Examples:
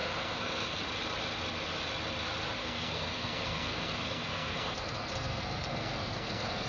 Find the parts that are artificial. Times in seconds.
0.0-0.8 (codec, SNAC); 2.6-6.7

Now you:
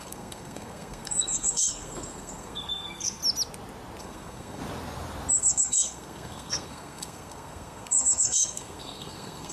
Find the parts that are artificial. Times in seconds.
0.0-3.2 (codec, SNAC); 4.0-4.6; 5.3-9.5

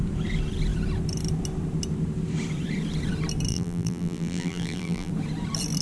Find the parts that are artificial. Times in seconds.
3.5-5.1 (vocoder, BigVGAN v2)

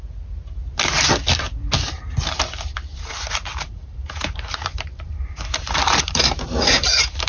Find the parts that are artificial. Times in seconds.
2.9-7.3 (vocoder, BigVGAN v2)

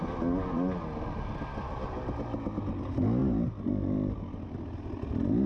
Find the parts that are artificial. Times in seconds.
none